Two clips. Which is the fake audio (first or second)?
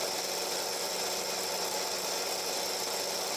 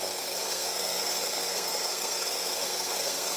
second